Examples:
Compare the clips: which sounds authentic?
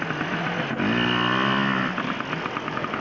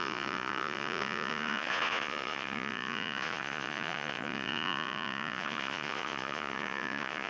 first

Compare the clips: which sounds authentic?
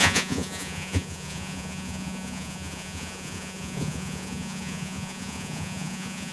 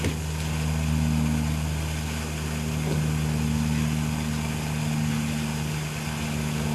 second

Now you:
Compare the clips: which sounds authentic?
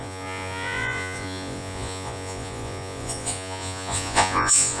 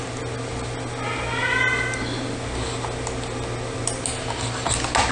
second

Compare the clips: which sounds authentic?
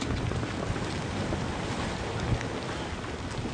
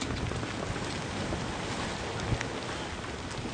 second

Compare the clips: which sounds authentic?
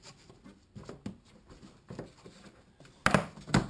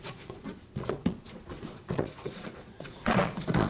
first